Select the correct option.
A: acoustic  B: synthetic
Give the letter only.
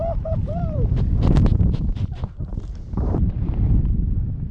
B